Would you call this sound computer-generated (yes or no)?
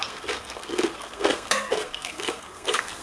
yes